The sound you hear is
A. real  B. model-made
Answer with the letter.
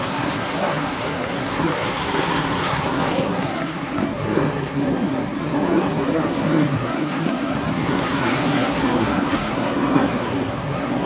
B